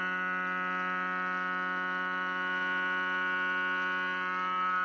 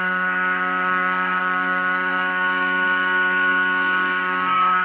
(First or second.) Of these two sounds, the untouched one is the first